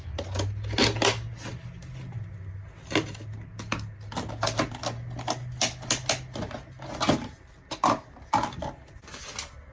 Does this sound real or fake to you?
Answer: real